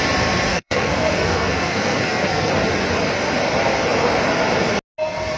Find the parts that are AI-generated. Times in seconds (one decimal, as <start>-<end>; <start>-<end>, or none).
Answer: 0.5-2.5